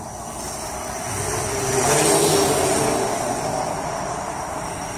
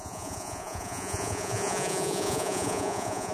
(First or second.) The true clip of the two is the first